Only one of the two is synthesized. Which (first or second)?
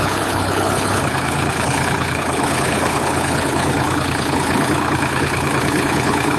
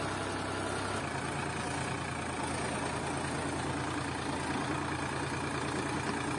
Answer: first